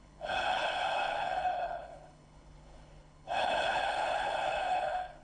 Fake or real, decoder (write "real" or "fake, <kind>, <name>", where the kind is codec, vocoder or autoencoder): fake, codec, HILCodec